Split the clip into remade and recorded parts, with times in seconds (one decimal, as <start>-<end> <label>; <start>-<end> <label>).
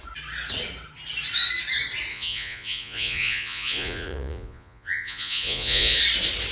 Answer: 0.0-2.1 recorded; 2.1-6.0 remade; 6.0-6.5 recorded